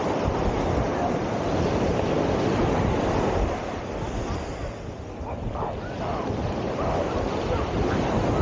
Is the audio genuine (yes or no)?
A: yes